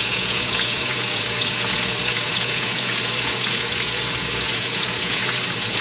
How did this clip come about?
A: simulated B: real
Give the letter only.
A